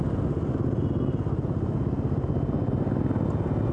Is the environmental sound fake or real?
real